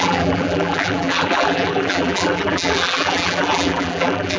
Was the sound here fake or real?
fake